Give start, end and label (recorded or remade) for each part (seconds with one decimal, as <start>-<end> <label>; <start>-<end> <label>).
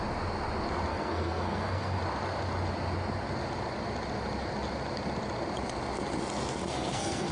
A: 0.0-0.9 recorded; 0.9-2.0 remade; 2.0-6.6 recorded; 6.6-7.3 remade